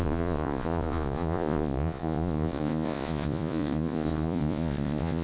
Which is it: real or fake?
fake